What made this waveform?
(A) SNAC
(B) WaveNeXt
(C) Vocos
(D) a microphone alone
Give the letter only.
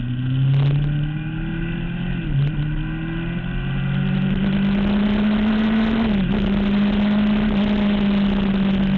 D